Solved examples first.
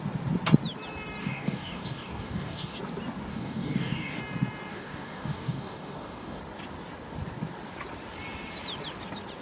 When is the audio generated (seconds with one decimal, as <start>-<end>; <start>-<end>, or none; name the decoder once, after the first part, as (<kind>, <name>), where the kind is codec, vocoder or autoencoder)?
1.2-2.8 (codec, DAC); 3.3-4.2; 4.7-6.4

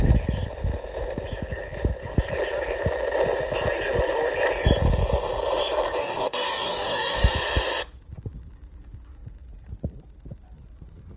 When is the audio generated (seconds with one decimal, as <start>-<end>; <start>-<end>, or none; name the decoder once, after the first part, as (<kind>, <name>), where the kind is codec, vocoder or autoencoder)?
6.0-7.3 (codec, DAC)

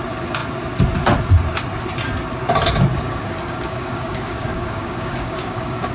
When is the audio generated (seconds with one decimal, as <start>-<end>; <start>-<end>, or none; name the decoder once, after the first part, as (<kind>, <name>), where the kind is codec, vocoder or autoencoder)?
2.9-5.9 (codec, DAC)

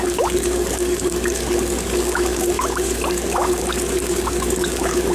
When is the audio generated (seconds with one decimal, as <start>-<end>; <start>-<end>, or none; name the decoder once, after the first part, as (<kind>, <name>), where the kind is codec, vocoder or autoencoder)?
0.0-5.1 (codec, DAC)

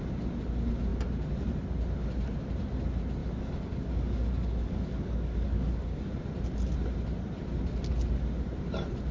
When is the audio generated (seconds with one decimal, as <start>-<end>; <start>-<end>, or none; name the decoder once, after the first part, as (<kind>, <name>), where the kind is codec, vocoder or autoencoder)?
3.2-6.0 (codec, DAC)